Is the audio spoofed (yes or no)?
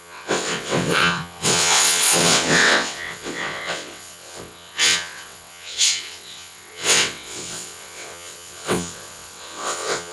yes